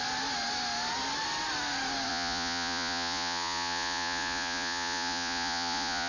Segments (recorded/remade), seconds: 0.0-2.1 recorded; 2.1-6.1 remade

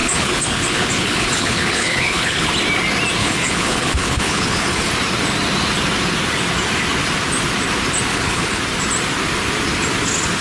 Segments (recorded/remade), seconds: 0.0-2.5 remade; 2.5-3.2 recorded; 3.2-4.9 remade; 4.9-8.1 recorded; 8.1-8.6 remade; 8.6-10.4 recorded